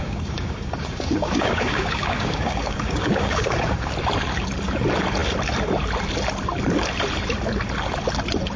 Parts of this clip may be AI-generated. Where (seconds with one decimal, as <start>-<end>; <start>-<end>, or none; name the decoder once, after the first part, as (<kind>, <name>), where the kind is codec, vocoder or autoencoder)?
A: 0.0-3.9 (codec, DAC)